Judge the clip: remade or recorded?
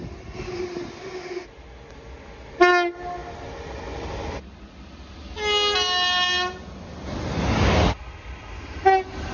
recorded